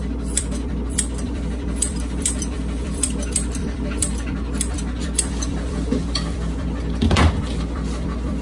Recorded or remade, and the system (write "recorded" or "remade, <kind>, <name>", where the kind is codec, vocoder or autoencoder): remade, vocoder, BigVGAN v2